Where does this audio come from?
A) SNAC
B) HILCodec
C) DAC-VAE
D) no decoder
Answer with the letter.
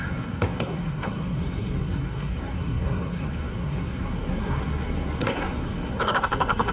A